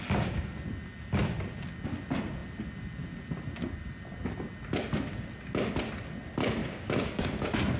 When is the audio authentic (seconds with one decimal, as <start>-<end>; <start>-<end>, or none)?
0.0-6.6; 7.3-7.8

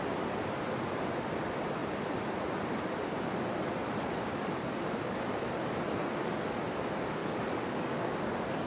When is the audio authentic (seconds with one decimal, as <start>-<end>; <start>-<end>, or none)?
0.0-7.2

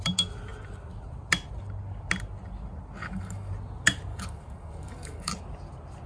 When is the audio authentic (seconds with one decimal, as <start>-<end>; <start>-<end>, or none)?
0.0-3.0; 3.5-4.1; 5.3-6.1

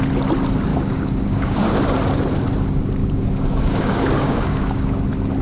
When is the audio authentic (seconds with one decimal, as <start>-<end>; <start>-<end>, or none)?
0.0-0.7; 1.7-3.0; 5.0-5.4

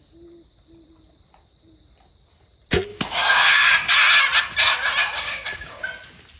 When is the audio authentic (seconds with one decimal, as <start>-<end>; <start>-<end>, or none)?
0.0-2.9; 3.9-5.0; 5.8-6.4

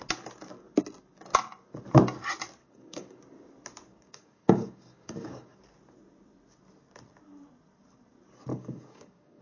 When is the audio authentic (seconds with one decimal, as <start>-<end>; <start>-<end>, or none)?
0.0-2.6; 3.2-3.9; 5.6-8.5

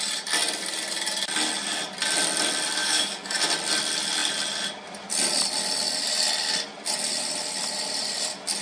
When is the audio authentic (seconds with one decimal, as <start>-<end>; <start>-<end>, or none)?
0.0-2.8; 3.4-8.6